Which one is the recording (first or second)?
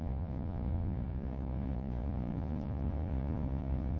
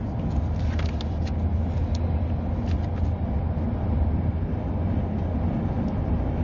second